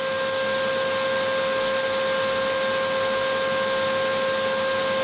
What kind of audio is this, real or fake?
real